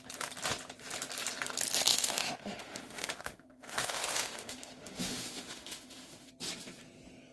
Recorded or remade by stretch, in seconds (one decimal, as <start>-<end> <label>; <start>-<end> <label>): 0.0-1.9 recorded; 1.9-6.3 remade; 6.3-7.3 recorded